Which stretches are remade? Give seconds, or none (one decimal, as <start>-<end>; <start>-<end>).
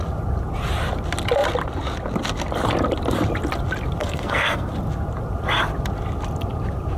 4.0-4.7